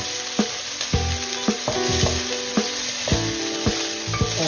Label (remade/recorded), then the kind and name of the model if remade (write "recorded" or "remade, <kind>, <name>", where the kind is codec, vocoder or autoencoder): recorded